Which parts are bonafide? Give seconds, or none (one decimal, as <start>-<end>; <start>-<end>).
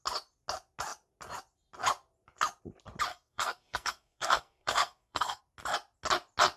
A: 0.0-3.1; 5.4-6.6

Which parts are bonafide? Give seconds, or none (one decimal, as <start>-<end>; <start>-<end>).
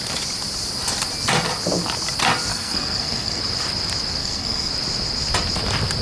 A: 0.0-2.5; 3.4-4.2; 4.7-6.0